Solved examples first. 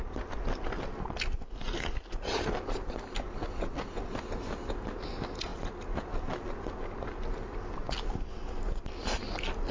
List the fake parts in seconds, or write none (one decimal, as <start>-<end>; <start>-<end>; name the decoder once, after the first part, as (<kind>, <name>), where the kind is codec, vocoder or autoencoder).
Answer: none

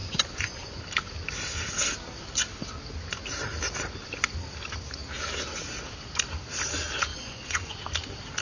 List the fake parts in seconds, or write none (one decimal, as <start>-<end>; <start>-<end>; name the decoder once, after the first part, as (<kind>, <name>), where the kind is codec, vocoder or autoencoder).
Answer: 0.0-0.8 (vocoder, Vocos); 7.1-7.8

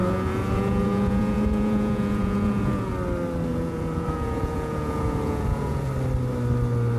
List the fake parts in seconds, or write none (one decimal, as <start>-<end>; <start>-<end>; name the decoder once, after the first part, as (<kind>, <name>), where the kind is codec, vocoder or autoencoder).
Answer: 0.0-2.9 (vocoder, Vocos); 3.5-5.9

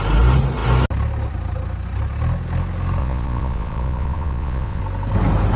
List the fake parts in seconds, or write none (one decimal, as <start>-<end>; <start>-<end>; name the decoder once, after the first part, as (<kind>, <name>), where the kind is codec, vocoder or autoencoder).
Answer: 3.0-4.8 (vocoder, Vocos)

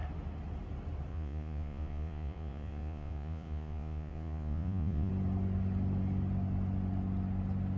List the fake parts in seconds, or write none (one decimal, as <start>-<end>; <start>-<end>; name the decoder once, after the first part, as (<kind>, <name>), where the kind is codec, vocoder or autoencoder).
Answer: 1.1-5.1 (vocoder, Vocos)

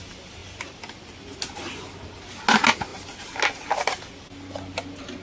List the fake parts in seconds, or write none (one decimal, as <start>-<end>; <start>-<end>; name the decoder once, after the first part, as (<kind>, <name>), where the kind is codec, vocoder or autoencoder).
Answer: none

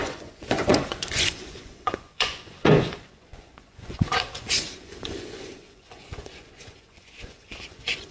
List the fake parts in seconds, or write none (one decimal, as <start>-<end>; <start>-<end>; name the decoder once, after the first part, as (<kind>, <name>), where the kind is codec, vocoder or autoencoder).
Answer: 0.0-8.1 (vocoder, Vocos)